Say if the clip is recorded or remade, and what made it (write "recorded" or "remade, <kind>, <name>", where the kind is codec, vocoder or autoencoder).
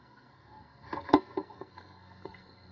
remade, codec, SNAC